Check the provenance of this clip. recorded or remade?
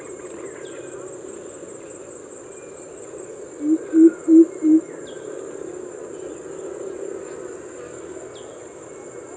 recorded